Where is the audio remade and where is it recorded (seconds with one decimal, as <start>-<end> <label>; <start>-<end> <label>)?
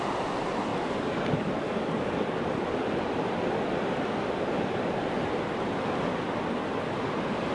0.0-0.7 recorded; 0.7-2.4 remade; 2.4-7.5 recorded